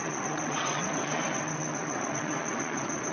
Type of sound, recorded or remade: remade